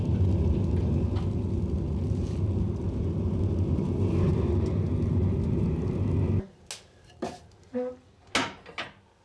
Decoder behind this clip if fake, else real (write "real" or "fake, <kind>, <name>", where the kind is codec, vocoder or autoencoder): real